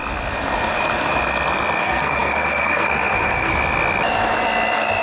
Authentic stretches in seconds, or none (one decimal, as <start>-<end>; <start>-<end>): 0.0-1.8; 3.5-5.0